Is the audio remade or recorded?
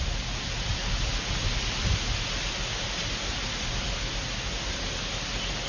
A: recorded